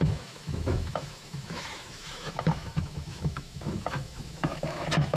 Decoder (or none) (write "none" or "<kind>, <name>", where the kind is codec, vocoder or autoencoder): autoencoder, DAC-VAE